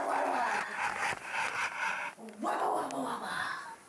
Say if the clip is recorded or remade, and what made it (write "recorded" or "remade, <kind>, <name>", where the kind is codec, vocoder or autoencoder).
recorded